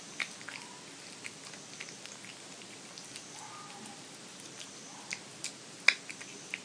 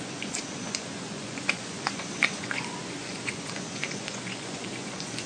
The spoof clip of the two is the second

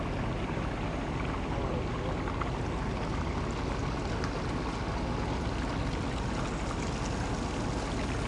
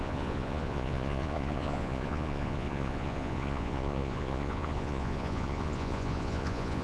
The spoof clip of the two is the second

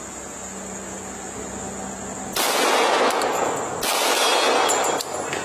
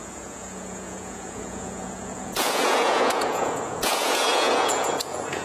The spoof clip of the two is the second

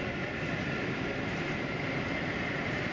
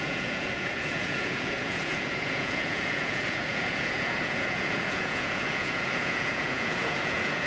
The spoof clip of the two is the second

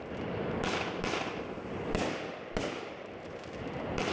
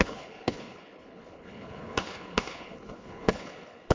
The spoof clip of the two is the second